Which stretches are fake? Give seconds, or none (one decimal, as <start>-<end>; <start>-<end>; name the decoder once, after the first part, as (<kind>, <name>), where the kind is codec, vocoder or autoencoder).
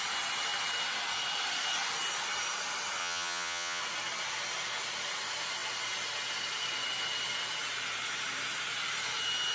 3.0-3.8 (vocoder, HiFi-GAN)